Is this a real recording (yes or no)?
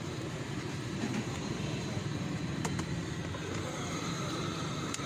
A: no